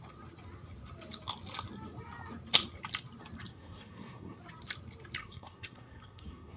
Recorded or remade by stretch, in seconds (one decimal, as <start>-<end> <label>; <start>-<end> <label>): 0.0-3.5 recorded; 3.5-4.4 remade; 4.4-5.2 recorded; 5.2-6.6 remade